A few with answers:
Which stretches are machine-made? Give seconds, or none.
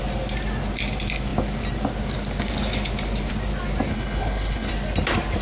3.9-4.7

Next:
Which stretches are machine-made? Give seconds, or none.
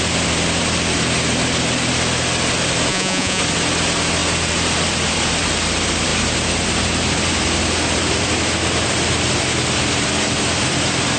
2.9-3.4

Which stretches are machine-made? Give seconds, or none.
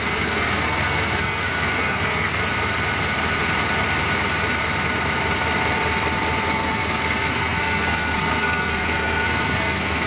0.0-2.4; 6.5-10.1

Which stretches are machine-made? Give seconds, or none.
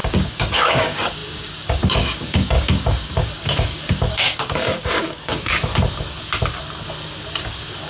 0.0-5.7; 7.4-7.9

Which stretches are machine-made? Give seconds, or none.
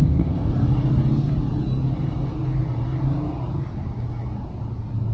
0.0-0.5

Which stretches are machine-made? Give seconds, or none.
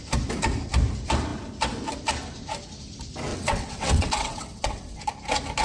3.3-5.0